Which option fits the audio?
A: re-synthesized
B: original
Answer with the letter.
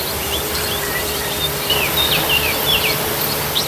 B